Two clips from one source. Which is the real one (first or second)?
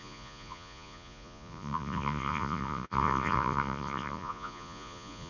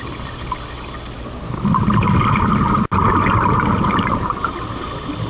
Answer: second